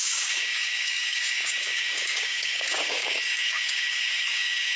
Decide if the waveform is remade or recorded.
remade